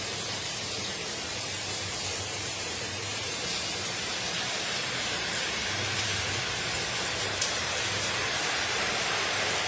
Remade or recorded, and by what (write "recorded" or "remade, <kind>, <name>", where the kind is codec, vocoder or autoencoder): remade, vocoder, BigVGAN v2